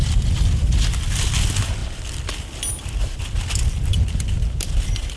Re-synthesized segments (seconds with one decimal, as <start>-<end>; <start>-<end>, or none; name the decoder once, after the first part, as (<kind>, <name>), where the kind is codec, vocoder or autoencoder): none